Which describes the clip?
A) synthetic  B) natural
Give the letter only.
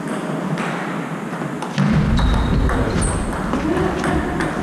B